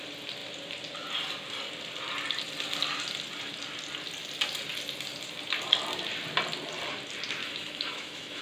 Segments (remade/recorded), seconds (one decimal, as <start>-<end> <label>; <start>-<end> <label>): 0.0-7.4 recorded; 7.4-8.4 remade